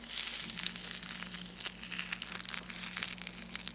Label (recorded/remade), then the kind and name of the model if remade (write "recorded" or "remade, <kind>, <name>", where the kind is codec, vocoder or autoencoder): recorded